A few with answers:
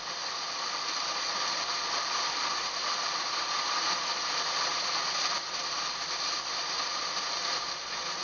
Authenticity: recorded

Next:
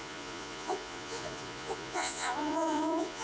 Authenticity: remade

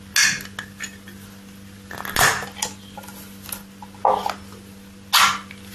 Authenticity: recorded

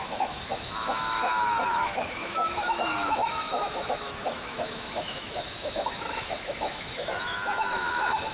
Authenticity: remade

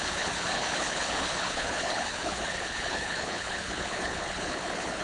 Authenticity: remade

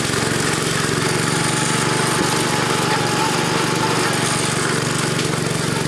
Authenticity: recorded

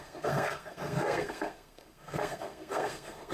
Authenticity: remade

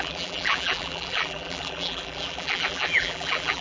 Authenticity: remade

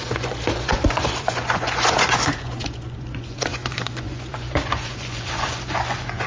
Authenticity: remade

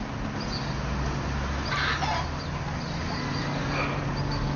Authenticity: recorded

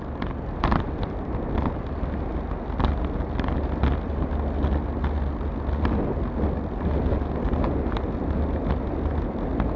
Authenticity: recorded